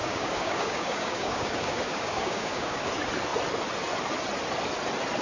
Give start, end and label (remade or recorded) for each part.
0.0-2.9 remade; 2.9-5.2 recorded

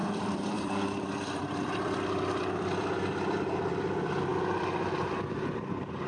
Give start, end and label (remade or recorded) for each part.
0.0-4.3 remade; 4.3-6.1 recorded

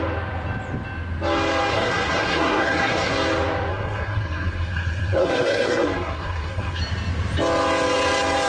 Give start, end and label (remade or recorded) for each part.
0.0-1.7 recorded; 1.7-3.1 remade; 3.1-3.7 recorded; 3.7-6.8 remade; 6.8-8.5 recorded

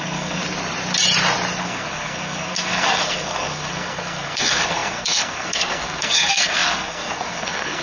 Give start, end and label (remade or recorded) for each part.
0.0-0.4 remade; 0.4-1.6 recorded; 1.6-7.8 remade